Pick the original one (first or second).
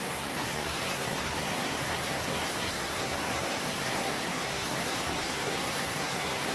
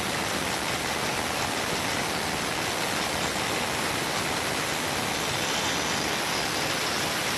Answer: second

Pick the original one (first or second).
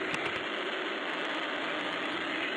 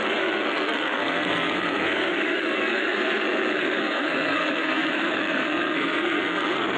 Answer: first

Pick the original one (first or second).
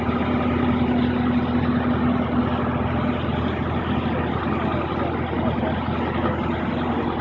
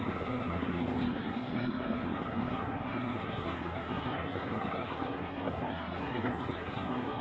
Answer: first